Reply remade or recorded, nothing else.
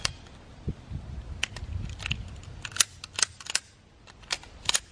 recorded